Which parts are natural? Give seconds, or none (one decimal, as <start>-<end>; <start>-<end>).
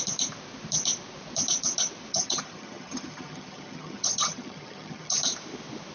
0.0-2.1; 5.2-5.9